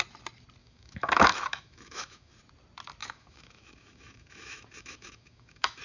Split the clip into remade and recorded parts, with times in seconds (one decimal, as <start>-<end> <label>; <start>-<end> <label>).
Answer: 0.0-0.6 recorded; 0.6-2.3 remade; 2.3-3.0 recorded; 3.0-5.8 remade